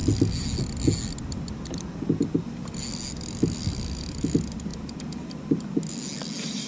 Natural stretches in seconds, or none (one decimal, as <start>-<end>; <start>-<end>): 0.0-6.7